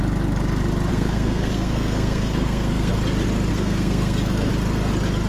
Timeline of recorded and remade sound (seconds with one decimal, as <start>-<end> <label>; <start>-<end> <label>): 0.0-0.9 recorded; 0.9-2.9 remade; 2.9-3.5 recorded; 3.5-4.5 remade; 4.5-5.3 recorded